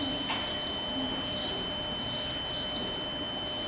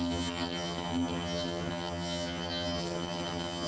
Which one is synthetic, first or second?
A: second